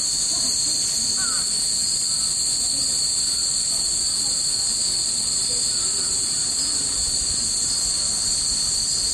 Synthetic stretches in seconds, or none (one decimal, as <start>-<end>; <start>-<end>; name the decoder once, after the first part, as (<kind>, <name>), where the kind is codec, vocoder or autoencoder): none